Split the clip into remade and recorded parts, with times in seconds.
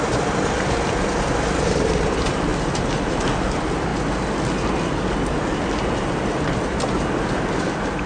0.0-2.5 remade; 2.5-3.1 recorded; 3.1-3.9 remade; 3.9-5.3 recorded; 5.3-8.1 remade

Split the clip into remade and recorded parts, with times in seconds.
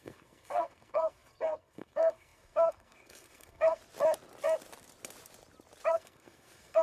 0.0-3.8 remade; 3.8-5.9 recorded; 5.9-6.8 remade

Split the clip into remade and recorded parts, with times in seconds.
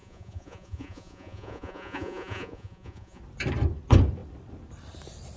0.0-3.2 remade; 3.2-5.4 recorded